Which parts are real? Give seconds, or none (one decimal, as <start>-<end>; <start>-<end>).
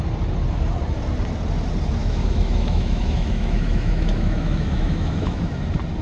0.0-2.0; 5.6-6.0